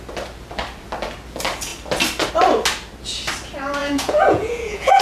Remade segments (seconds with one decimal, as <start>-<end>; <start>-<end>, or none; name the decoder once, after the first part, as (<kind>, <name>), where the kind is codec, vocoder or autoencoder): 3.8-5.0 (vocoder, Vocos)